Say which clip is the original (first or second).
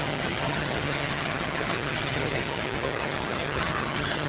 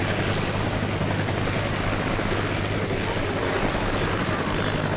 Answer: second